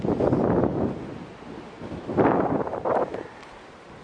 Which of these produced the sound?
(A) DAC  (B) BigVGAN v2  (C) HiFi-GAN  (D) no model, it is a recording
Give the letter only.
D